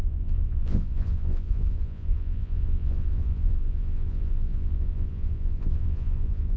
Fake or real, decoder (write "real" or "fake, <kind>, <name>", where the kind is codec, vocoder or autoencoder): fake, vocoder, Vocos